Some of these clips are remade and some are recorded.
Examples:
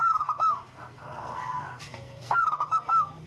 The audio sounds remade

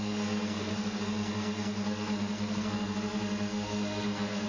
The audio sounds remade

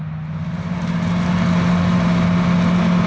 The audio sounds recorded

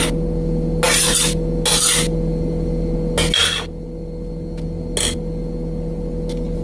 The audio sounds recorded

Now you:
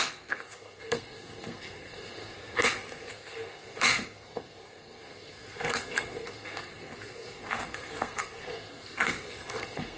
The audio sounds remade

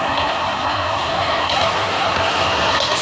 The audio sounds remade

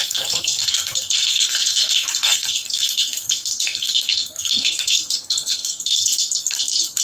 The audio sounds remade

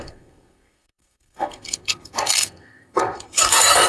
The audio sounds remade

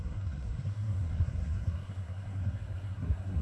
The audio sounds remade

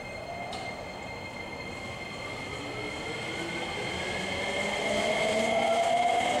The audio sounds recorded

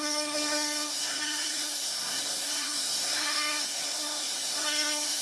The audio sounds remade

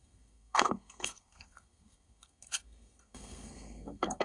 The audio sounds remade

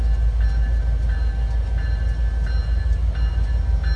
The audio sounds recorded